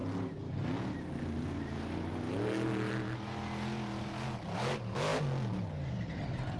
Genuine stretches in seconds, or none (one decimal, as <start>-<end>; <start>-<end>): 0.0-6.6